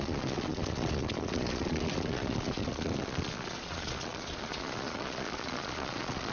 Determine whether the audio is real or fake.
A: fake